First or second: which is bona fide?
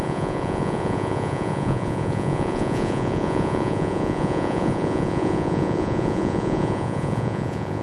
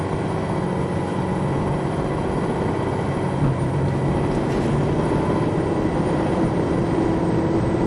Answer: second